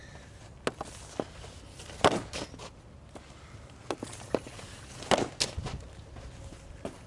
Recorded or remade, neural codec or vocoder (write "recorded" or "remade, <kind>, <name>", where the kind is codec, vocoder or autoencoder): recorded